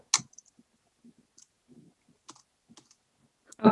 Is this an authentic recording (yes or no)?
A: yes